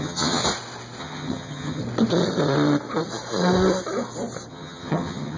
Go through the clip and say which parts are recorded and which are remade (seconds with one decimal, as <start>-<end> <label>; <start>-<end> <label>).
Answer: 0.0-0.4 remade; 0.4-1.0 recorded; 1.0-1.8 remade; 1.8-4.5 recorded; 4.5-5.4 remade